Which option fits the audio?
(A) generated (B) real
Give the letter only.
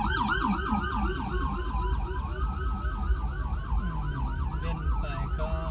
B